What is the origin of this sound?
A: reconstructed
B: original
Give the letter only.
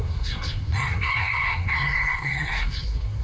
A